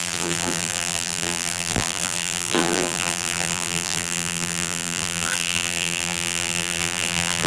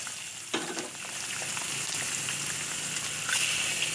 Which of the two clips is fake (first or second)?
first